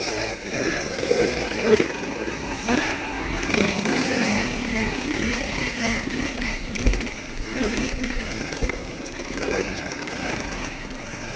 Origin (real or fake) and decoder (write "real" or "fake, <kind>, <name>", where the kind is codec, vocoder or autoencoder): fake, codec, SNAC